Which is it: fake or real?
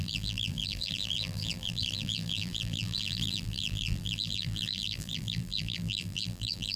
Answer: fake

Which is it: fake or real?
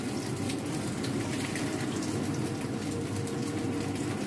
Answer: fake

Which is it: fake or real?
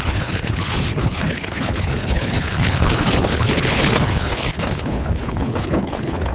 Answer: fake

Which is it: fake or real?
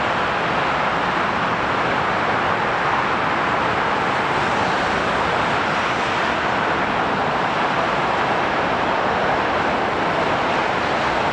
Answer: real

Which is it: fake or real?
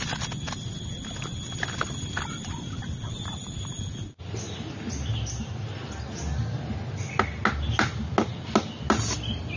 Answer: real